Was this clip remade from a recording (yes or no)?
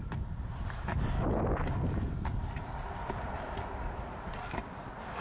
no